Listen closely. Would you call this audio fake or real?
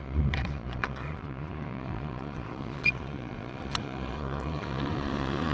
fake